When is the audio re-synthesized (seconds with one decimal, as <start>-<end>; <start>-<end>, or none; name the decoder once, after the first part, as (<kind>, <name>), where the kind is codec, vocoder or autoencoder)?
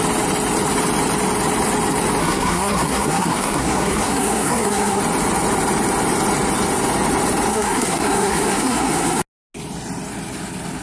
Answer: 2.2-5.0 (codec, SNAC); 7.5-9.2